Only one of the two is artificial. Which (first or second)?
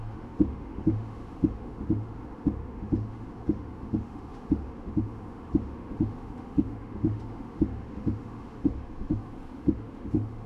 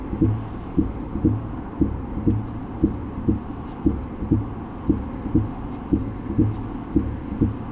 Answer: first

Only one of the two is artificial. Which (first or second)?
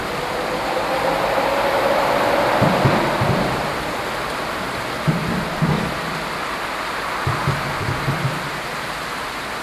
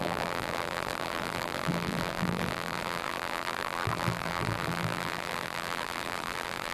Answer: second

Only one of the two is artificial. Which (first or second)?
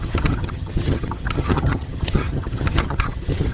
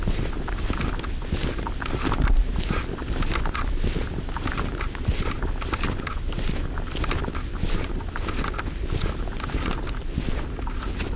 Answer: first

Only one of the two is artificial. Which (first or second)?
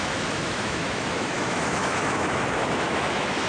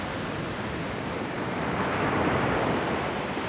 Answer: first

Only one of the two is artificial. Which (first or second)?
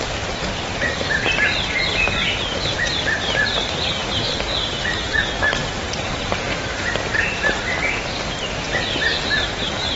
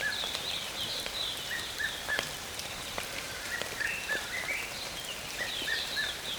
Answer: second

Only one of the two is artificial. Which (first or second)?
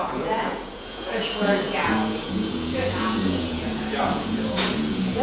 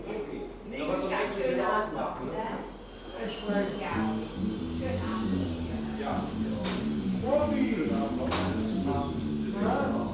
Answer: first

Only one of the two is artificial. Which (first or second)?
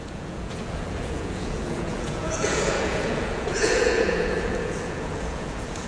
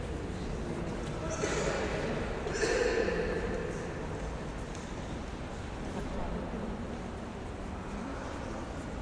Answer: first